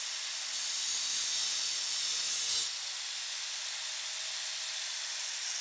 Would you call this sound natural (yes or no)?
yes